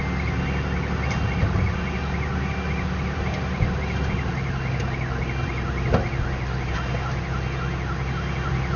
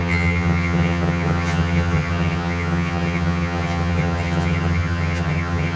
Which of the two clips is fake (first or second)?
second